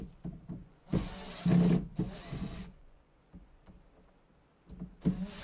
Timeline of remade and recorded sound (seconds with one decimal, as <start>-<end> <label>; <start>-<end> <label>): 0.0-0.6 recorded; 0.6-1.1 remade; 1.1-2.4 recorded; 2.4-3.7 remade; 3.7-5.4 recorded